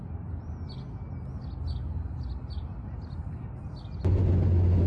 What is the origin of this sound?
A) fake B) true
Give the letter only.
B